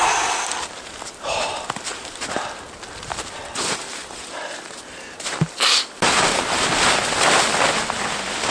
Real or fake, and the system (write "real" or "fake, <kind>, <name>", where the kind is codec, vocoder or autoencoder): real